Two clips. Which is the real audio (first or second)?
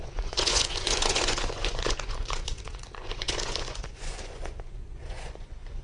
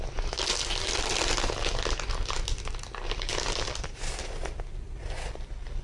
second